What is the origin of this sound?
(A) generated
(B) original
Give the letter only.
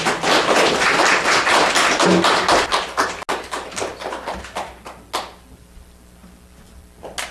B